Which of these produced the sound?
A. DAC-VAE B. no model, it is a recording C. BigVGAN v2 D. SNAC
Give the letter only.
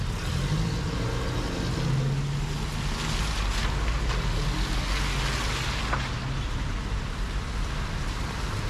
B